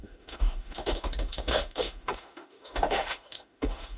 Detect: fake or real fake